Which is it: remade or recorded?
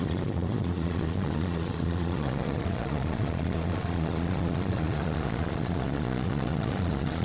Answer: remade